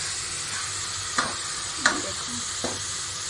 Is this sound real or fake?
real